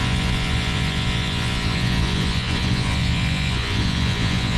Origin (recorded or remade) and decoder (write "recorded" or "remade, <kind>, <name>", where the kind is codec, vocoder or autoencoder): remade, vocoder, Vocos